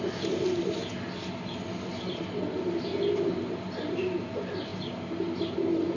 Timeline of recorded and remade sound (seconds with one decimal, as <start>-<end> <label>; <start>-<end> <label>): 0.0-6.0 recorded